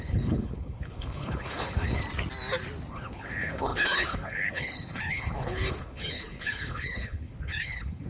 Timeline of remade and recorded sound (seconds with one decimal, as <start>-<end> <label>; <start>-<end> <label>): 0.0-2.0 remade; 2.0-2.9 recorded; 2.9-8.1 remade